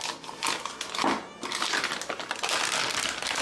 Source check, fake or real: real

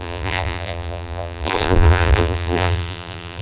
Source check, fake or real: fake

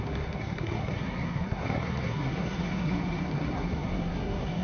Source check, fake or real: fake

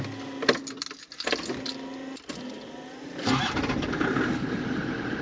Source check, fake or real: real